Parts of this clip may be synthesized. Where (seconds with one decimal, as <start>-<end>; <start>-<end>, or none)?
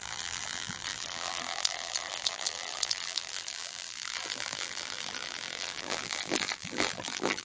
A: 0.0-7.4